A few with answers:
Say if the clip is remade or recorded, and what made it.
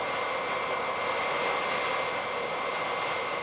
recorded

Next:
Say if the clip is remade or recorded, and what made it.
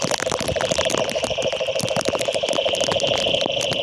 remade, vocoder, BigVGAN v2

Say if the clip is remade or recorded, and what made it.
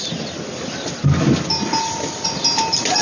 recorded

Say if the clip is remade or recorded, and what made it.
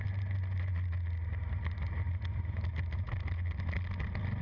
recorded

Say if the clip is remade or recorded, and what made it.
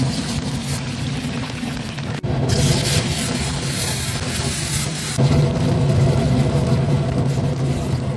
recorded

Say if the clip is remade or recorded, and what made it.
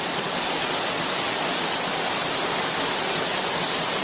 recorded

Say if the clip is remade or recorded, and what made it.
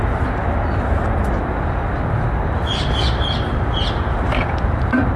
recorded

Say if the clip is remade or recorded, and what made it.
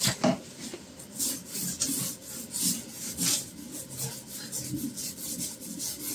recorded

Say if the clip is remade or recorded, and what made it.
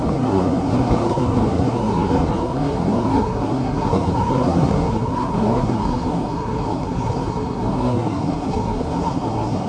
remade, codec, SNAC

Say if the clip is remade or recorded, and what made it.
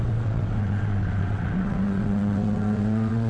remade, vocoder, WaveNeXt